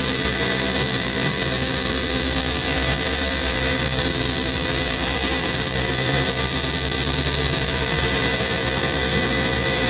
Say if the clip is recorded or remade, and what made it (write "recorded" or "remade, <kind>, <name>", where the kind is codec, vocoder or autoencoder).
remade, vocoder, BigVGAN v2